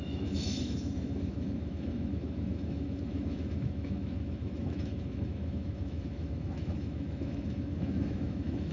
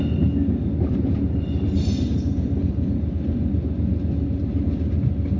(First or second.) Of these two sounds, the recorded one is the second